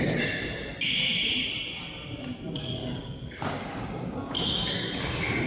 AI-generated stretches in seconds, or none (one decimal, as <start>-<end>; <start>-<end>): 2.8-4.7